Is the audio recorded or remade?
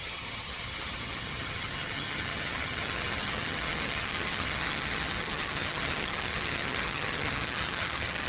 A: remade